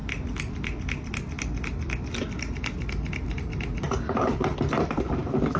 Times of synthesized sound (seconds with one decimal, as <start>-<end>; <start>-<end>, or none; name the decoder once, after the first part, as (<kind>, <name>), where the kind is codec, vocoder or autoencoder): 3.4-4.5 (vocoder, BigVGAN v2); 5.1-5.6